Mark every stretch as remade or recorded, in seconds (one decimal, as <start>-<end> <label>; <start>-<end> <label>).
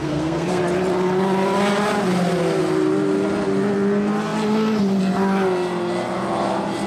0.0-0.6 remade; 0.6-6.9 recorded